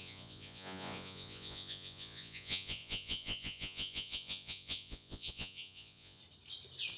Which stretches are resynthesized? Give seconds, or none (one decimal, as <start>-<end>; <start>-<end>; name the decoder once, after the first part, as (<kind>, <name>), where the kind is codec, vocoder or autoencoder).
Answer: 0.0-6.2 (vocoder, Vocos)